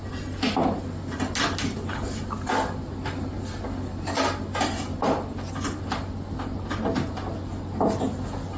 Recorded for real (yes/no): yes